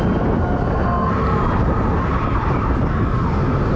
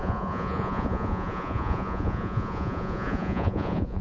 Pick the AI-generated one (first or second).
second